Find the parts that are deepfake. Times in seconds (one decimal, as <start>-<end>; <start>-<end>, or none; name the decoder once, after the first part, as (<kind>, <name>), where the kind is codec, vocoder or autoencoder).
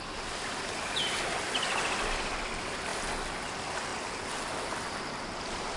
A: 3.9-5.8 (vocoder, BigVGAN v2)